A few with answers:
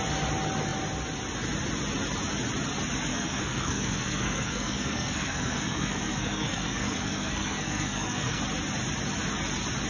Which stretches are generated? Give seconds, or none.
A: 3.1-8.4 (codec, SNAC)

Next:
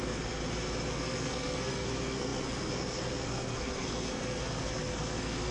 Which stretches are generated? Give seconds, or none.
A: 0.0-0.4 (codec, SNAC); 0.9-5.5

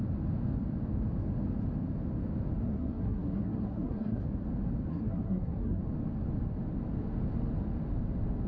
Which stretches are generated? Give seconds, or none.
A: 2.6-4.2 (codec, SNAC); 4.9-5.8

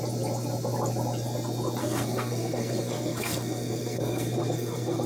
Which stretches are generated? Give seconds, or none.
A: 1.8-5.1 (codec, SNAC)

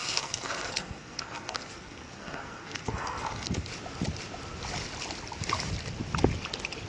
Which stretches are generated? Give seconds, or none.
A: 0.0-3.7 (codec, SNAC)

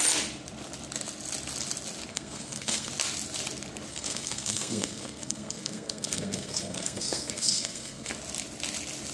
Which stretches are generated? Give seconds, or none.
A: 2.1-2.9 (codec, SNAC); 3.9-8.1